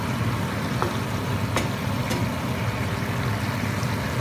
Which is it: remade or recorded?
recorded